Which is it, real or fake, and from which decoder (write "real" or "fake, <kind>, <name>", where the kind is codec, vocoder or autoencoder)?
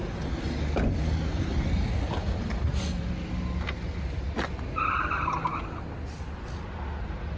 real